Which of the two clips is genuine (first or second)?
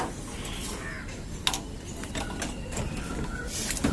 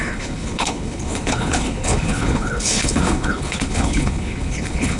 first